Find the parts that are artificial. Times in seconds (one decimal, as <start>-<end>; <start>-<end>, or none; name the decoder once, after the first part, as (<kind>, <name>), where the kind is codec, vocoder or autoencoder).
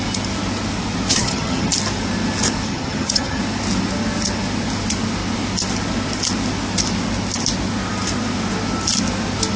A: 1.1-1.7 (vocoder, HiFi-GAN); 2.7-3.4